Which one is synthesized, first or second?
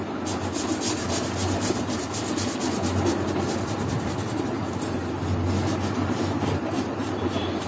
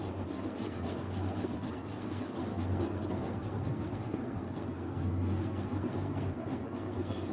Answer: second